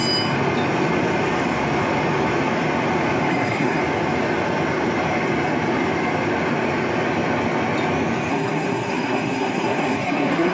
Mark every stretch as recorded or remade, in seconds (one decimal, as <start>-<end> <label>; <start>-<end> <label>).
0.0-3.3 recorded; 3.3-3.8 remade; 3.8-8.3 recorded; 8.3-10.5 remade